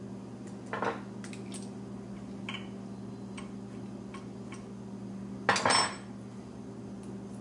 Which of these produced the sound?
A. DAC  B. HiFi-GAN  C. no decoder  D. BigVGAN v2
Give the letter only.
C